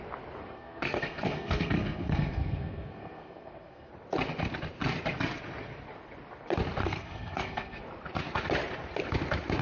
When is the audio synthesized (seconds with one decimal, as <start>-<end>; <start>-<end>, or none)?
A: 0.4-3.9; 6.8-7.8